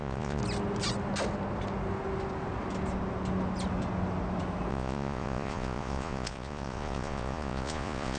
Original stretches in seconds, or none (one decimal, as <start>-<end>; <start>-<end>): 0.4-4.7